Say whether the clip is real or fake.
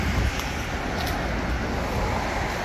real